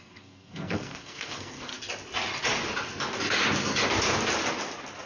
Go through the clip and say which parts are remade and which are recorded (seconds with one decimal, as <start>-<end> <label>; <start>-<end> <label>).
0.0-1.7 remade; 1.7-5.1 recorded